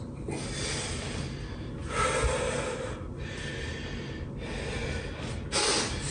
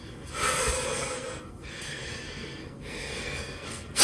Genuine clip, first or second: first